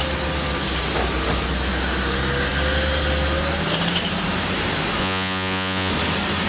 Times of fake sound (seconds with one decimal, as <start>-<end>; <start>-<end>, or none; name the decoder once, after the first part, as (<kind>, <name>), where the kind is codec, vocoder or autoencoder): 5.0-5.9 (vocoder, Vocos)